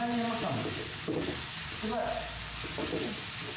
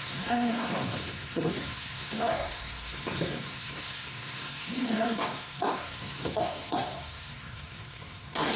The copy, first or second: second